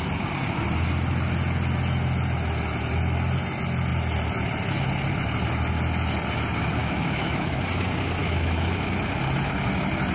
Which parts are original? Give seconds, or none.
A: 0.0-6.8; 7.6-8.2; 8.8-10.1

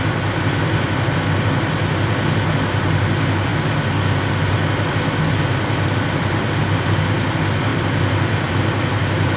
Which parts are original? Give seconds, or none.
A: 0.0-9.4

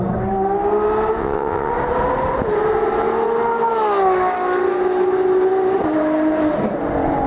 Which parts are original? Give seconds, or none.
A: 0.0-1.2; 1.7-7.3

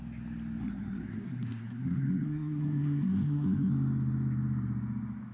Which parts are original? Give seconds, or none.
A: 0.0-0.6; 3.7-5.3

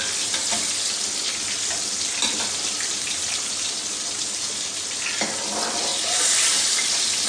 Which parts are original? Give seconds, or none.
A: 0.0-7.3

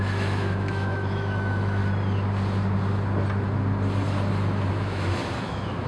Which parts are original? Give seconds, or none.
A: 1.8-4.7

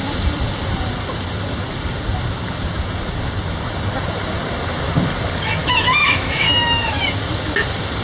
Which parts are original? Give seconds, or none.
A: 0.0-5.6; 7.0-8.0

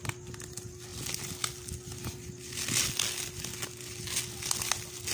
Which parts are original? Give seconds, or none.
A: 0.0-5.1